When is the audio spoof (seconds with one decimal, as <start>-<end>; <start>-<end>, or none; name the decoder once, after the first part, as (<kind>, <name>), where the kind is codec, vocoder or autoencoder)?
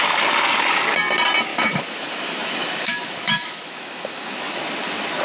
1.5-4.6 (autoencoder, DAC-VAE)